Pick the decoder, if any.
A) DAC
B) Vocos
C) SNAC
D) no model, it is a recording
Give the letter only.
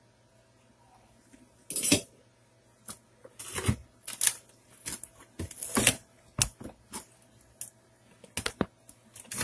D